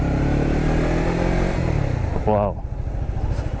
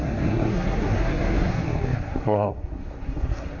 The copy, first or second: second